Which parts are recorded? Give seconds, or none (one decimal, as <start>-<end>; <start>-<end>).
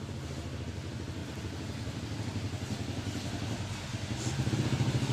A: 0.0-5.1